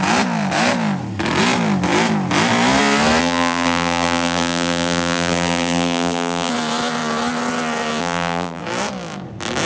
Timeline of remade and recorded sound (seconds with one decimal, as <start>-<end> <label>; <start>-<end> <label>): 0.0-3.2 recorded; 3.2-6.5 remade; 6.5-8.0 recorded; 8.0-8.6 remade; 8.6-9.7 recorded